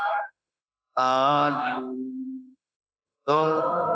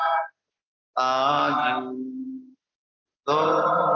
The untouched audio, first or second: second